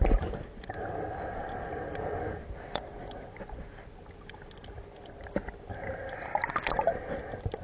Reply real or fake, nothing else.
real